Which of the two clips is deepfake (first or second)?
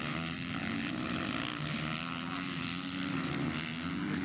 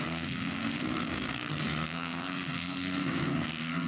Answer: second